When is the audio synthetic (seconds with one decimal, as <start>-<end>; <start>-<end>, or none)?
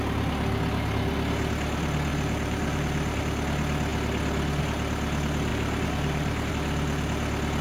2.1-3.2; 5.5-6.5